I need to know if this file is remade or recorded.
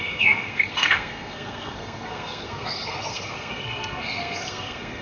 remade